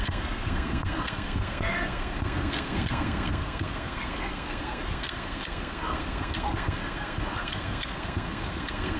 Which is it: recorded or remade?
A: remade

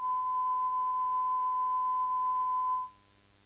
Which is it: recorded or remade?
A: recorded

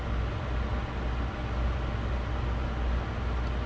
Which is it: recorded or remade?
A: recorded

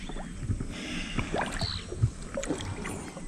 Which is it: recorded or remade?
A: recorded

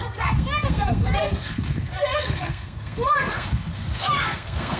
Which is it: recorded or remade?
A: remade